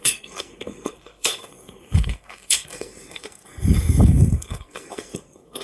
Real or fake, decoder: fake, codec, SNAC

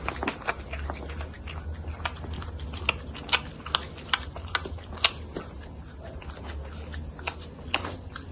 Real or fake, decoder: real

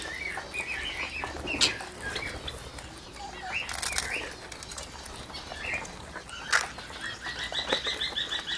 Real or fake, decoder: real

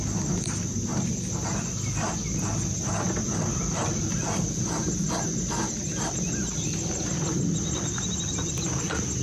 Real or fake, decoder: real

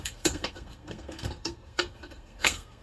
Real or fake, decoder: fake, codec, SNAC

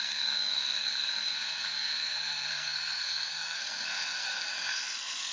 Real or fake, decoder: fake, codec, SNAC